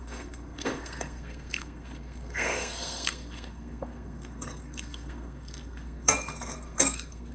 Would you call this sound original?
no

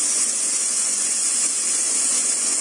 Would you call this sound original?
no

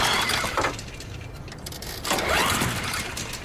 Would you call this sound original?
no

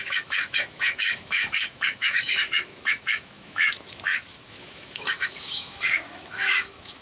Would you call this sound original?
no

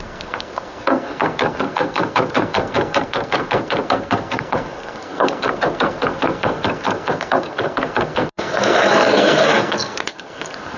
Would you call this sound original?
no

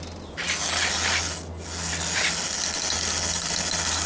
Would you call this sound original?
yes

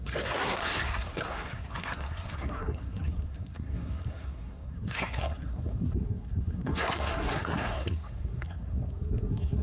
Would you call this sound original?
no